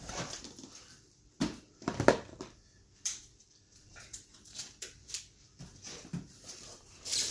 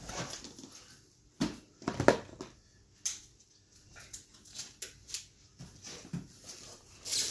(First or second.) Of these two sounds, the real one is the second